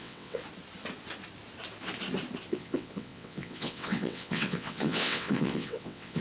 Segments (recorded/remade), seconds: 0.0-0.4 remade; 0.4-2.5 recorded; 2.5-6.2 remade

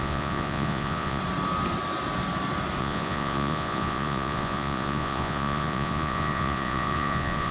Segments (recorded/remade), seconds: 0.0-1.2 remade; 1.2-2.8 recorded; 2.8-7.5 remade

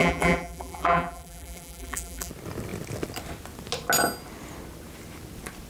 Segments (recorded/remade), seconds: 0.0-2.3 remade; 2.3-5.7 recorded

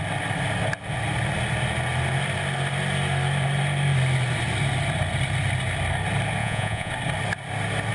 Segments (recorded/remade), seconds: 0.0-6.4 recorded; 6.4-6.9 remade; 6.9-7.9 recorded

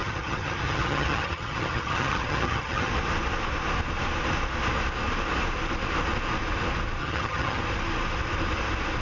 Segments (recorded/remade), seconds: 0.0-2.9 remade; 2.9-7.0 recorded; 7.0-7.6 remade; 7.6-9.0 recorded

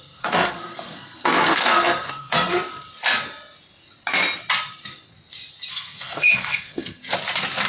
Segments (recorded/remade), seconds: 0.0-2.5 remade; 2.5-5.7 recorded; 5.7-7.0 remade; 7.0-7.7 recorded

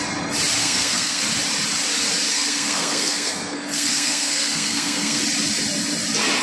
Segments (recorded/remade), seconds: 0.0-0.6 recorded; 0.6-1.2 remade; 1.2-2.3 recorded; 2.3-5.2 remade; 5.2-6.4 recorded

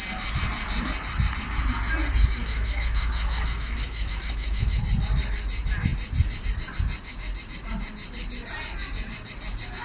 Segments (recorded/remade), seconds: 0.0-2.4 recorded; 2.4-4.8 remade; 4.8-9.8 recorded